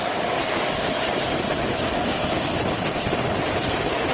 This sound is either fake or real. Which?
real